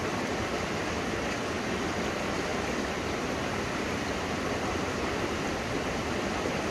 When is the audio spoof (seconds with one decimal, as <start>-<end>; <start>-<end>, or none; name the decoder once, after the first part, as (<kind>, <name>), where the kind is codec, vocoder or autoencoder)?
none

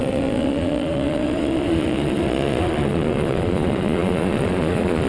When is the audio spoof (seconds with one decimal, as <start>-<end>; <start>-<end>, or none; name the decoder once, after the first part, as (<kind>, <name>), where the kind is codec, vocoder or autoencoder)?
0.0-5.1 (vocoder, Vocos)

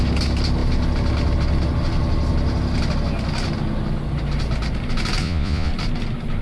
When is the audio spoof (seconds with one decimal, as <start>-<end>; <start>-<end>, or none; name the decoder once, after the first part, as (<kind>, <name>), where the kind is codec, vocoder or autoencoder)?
5.2-5.7 (vocoder, Vocos)

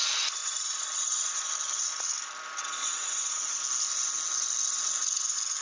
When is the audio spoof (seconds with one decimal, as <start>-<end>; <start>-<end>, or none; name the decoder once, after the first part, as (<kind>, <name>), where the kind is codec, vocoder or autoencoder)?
0.4-1.5 (vocoder, Vocos); 2.6-3.6

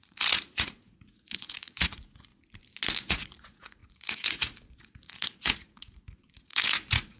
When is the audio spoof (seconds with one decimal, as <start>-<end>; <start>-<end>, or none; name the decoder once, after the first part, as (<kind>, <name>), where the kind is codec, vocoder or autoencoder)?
0.0-2.3 (vocoder, Vocos); 3.1-7.2

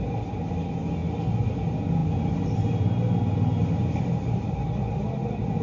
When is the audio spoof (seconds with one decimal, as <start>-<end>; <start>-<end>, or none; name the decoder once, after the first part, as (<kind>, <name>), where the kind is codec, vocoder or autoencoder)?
none

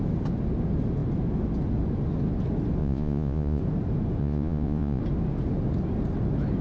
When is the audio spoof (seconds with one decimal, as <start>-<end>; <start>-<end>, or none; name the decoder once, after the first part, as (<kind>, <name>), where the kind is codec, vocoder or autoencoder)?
2.8-3.6 (vocoder, Vocos); 4.2-5.0

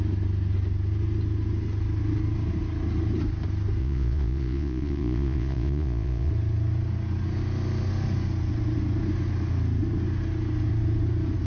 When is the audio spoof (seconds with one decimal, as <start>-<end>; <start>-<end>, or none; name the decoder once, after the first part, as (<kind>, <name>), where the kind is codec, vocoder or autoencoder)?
3.8-6.3 (vocoder, Vocos)